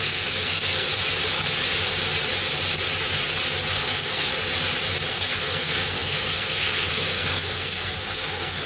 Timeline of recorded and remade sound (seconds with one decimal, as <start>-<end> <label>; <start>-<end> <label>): 0.0-0.9 remade; 0.9-3.7 recorded; 3.7-4.3 remade; 4.3-5.1 recorded; 5.1-8.7 remade